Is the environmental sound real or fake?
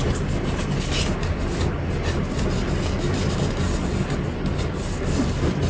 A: real